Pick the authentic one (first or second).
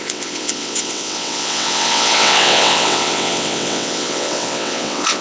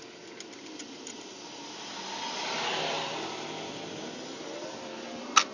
second